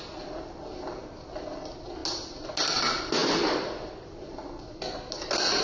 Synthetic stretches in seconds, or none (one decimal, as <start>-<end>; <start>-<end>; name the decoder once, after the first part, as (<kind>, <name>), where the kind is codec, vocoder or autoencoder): 3.2-4.5 (vocoder, BigVGAN v2)